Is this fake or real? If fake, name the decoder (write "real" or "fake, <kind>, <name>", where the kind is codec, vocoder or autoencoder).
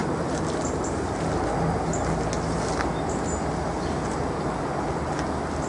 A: real